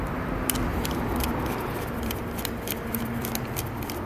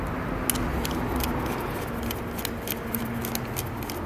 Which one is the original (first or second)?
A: second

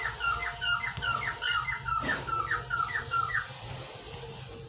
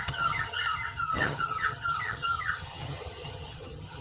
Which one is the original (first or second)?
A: first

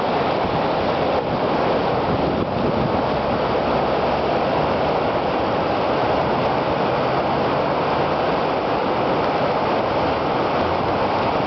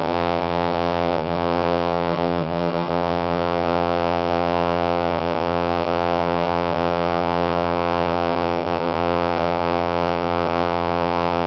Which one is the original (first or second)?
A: first